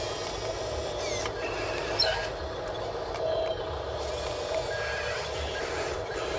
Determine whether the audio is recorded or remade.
recorded